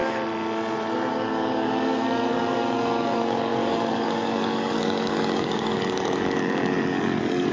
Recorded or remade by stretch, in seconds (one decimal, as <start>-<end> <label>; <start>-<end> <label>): 0.0-1.1 recorded; 1.1-7.5 remade